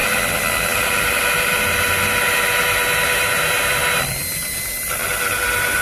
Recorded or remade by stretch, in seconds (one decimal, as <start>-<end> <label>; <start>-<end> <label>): 0.0-5.8 recorded